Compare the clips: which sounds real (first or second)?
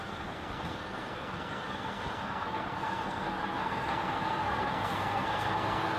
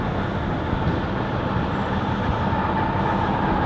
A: second